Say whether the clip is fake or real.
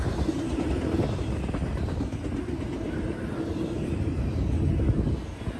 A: real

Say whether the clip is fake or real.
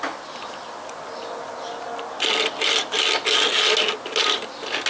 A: real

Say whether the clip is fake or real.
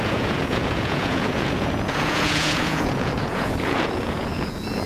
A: fake